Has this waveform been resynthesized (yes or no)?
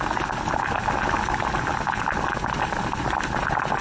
no